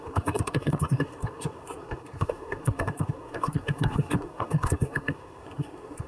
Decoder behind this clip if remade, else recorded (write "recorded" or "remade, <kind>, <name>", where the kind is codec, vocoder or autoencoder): remade, codec, SNAC